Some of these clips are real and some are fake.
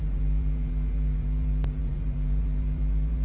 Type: fake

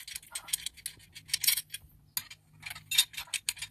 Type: real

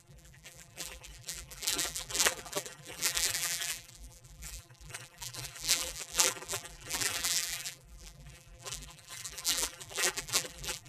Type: fake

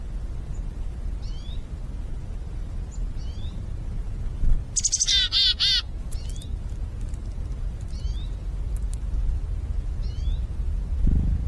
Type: real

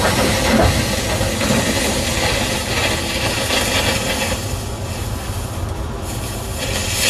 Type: real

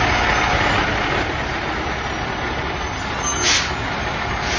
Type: real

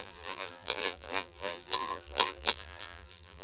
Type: fake